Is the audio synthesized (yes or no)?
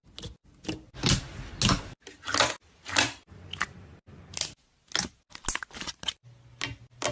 no